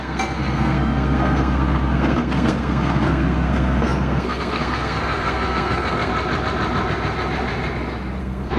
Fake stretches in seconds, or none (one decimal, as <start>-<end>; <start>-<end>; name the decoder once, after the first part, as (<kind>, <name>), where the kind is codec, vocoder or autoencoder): 0.0-6.1 (codec, SNAC); 8.2-8.6